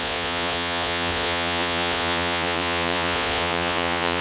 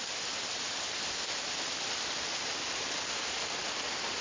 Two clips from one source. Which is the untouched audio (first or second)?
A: second